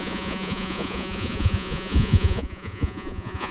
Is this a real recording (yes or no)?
no